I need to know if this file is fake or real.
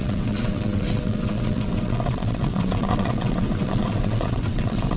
fake